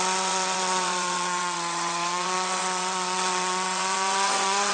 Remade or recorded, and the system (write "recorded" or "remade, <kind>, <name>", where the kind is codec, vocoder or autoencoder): remade, vocoder, WaveNeXt